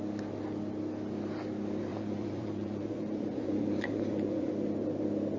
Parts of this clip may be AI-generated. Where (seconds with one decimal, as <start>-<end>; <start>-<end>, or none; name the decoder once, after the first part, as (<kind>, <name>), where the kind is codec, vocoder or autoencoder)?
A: 1.9-4.5 (vocoder, Vocos)